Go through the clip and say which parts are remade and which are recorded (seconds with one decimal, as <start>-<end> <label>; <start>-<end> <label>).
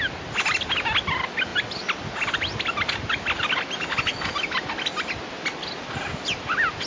0.0-6.9 recorded